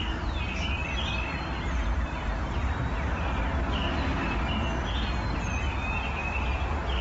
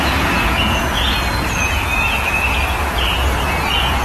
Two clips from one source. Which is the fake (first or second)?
second